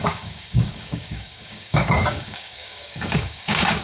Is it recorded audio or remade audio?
remade